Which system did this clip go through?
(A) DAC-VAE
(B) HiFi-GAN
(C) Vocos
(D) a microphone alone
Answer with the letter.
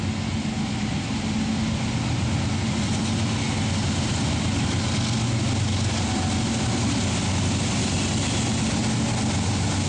D